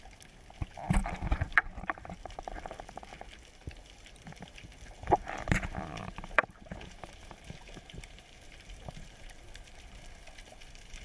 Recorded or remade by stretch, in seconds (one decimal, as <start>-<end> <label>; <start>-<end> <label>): 0.0-1.0 recorded; 1.0-2.4 remade; 2.4-6.0 recorded; 6.0-9.8 remade; 9.8-11.0 recorded